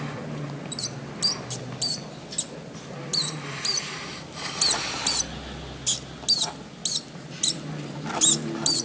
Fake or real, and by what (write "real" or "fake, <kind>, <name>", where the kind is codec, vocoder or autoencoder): real